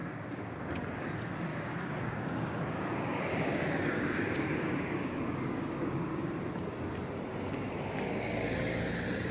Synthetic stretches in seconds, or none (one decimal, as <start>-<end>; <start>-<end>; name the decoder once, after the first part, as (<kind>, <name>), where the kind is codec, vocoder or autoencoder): 0.0-1.1 (codec, DAC); 1.5-6.3